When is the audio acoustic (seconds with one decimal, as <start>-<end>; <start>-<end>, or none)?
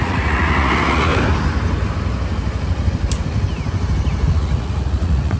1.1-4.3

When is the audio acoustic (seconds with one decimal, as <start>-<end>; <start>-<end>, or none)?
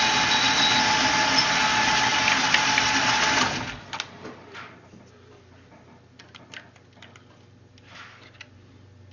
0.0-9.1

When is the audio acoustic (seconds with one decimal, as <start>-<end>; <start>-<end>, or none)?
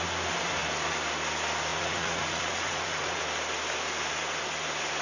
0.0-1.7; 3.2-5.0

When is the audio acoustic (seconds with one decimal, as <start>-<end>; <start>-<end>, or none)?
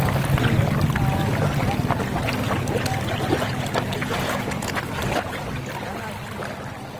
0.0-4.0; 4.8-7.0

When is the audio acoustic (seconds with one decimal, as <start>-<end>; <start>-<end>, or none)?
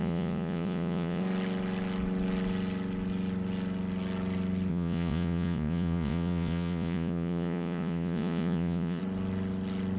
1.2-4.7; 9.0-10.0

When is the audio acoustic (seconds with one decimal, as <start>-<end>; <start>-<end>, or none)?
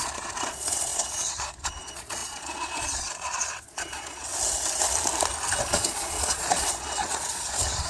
4.3-5.6